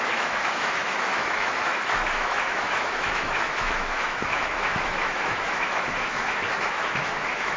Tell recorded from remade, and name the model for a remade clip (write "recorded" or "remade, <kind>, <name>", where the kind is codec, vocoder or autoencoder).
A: remade, autoencoder, DAC-VAE